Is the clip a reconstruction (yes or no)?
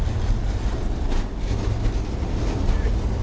no